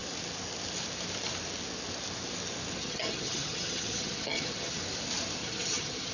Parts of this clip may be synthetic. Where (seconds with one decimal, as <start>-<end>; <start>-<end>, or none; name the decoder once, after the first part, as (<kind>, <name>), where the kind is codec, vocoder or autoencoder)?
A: 2.8-4.8 (vocoder, HiFi-GAN); 5.4-6.1